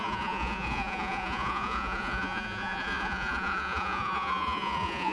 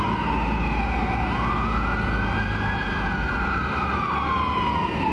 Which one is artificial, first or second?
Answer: first